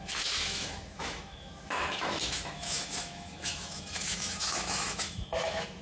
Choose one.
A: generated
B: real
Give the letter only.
A